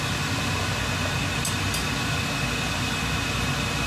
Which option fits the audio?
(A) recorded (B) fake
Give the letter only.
A